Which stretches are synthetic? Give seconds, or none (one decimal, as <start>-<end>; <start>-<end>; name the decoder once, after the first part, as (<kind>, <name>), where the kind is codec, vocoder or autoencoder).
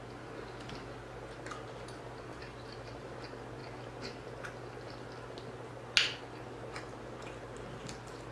2.3-3.2 (vocoder, BigVGAN v2)